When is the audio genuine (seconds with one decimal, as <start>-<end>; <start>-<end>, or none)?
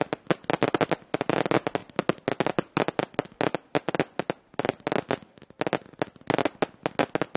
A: 0.0-7.4